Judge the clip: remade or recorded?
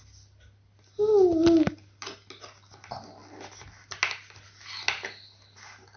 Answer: recorded